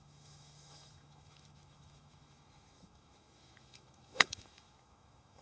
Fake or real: fake